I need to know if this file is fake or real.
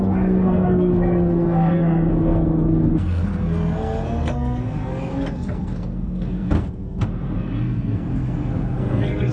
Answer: fake